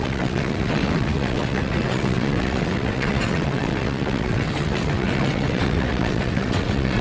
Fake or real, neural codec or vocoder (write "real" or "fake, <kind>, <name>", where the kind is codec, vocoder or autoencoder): fake, vocoder, WaveNeXt